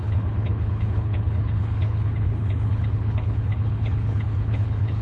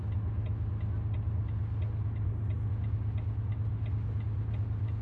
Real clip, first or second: second